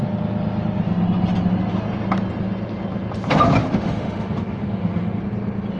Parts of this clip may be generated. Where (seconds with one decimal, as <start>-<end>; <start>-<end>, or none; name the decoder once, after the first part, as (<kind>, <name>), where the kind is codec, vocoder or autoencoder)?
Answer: 3.6-5.2 (autoencoder, DAC-VAE)